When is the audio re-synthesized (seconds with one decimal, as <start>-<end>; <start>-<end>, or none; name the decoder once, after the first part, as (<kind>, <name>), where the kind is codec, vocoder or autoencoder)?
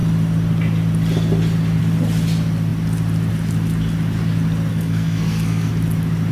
4.7-5.7 (codec, SNAC)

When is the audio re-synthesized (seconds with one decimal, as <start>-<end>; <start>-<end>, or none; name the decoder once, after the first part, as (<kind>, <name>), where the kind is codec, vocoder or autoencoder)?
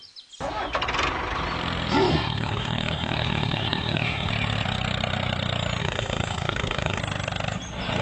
2.1-4.3 (codec, SNAC); 5.8-7.0